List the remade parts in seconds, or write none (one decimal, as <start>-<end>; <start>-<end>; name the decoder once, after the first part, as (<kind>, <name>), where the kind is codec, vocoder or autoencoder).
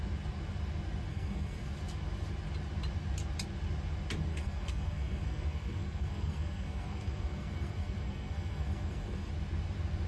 1.1-1.7 (codec, SNAC); 4.3-9.3